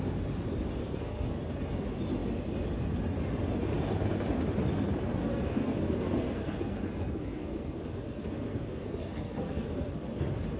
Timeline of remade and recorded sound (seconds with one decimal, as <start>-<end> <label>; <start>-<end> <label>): 0.0-0.8 recorded; 0.8-1.3 remade; 1.3-5.2 recorded; 5.2-10.2 remade; 10.2-10.6 recorded